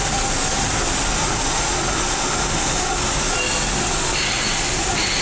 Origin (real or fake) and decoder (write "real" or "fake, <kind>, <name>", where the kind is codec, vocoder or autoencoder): real